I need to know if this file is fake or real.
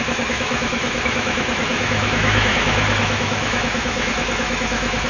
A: fake